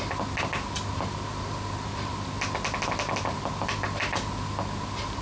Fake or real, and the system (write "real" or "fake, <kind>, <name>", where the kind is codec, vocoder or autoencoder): real